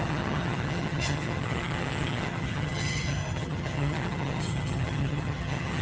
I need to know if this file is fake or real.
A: fake